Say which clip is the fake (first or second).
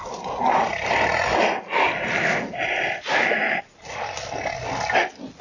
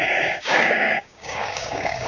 second